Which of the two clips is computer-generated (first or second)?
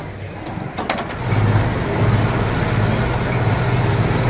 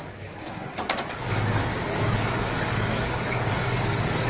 second